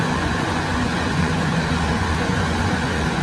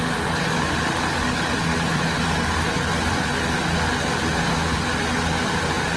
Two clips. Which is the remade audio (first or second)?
first